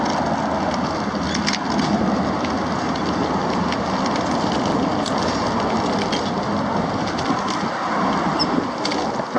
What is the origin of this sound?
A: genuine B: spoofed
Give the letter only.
A